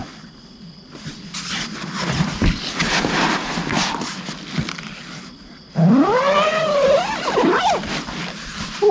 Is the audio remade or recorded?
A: recorded